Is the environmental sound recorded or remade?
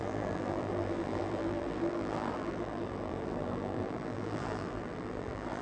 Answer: remade